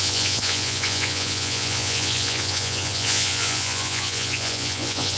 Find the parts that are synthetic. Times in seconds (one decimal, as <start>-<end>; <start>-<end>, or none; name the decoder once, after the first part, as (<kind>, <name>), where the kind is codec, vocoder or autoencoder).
0.0-5.2 (vocoder, Vocos)